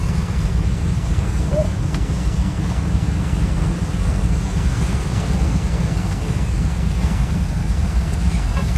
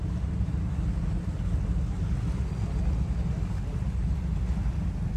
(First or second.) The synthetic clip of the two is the first